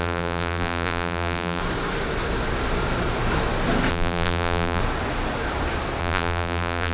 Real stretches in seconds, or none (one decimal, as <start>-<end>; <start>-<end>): 1.6-3.9; 4.8-6.0

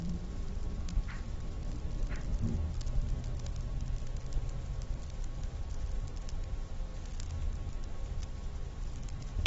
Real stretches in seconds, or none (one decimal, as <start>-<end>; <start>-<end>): 1.6-4.5; 6.9-8.0

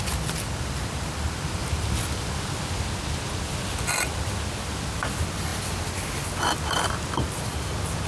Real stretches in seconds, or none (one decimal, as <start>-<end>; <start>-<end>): 1.6-3.9; 5.5-8.1

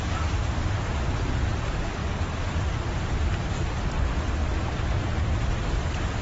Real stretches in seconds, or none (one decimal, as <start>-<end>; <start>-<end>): 0.0-6.2

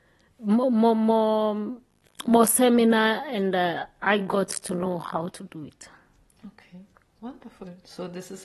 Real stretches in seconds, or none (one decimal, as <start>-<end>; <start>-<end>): 0.0-1.9; 2.5-4.2; 5.3-8.4

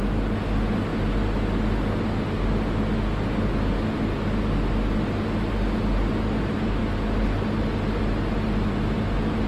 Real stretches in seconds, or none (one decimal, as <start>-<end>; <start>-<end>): 0.0-9.5

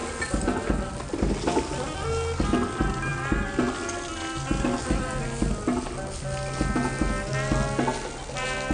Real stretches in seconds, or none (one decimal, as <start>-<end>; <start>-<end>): 0.0-8.7

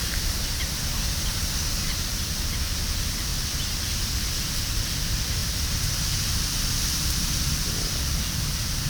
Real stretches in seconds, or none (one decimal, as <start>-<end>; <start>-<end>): 0.9-1.9